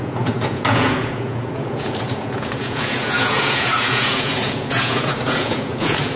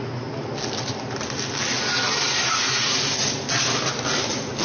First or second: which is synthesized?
first